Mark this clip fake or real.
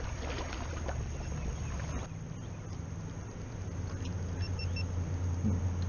real